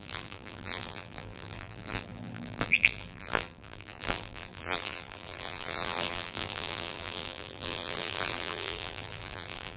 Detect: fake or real fake